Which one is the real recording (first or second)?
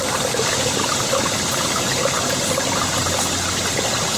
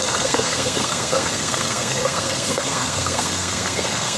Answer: first